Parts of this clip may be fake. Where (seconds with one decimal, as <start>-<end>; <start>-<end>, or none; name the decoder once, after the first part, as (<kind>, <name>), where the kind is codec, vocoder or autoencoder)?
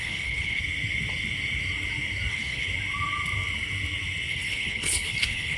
0.0-0.6 (codec, HILCodec); 2.3-2.7; 4.3-5.6